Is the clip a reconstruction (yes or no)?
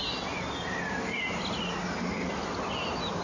no